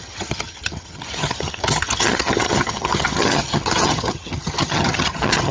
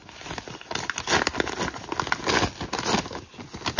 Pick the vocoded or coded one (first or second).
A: first